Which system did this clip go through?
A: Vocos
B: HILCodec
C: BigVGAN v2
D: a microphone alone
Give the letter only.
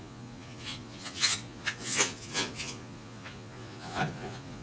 A